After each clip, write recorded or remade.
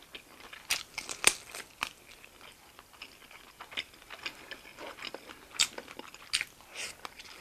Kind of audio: recorded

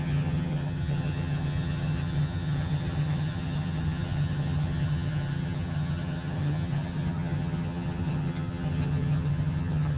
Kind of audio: remade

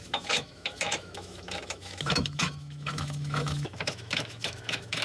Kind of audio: remade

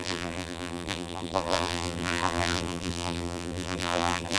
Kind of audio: remade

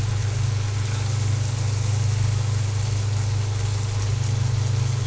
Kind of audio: recorded